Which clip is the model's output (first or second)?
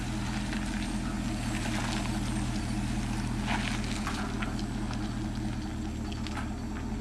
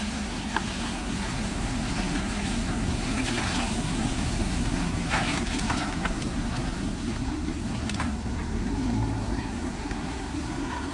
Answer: second